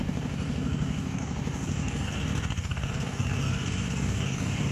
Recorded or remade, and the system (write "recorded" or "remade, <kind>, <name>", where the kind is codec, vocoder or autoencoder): remade, codec, DAC